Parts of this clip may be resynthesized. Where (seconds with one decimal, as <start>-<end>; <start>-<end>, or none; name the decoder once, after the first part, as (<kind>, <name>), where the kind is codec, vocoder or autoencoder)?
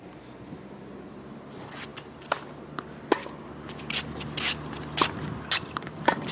none